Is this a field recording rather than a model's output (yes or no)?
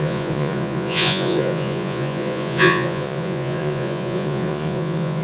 no